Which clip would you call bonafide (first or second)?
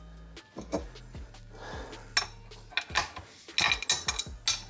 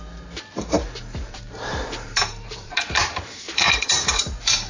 first